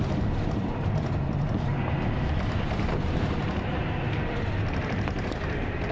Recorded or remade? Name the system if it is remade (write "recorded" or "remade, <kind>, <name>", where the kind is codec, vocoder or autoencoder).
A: remade, vocoder, BigVGAN v2